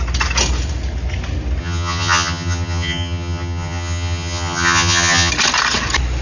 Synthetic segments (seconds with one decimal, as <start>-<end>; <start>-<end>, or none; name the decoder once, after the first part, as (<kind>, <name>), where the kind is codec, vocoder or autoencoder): 1.6-5.3 (vocoder, HiFi-GAN)